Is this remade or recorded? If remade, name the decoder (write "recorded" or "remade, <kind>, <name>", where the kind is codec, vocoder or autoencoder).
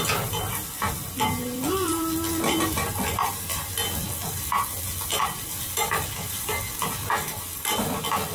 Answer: recorded